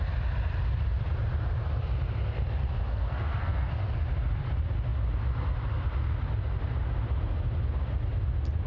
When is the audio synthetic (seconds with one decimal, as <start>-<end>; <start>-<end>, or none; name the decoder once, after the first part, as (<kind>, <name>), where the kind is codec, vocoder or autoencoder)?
2.9-3.7 (codec, SNAC)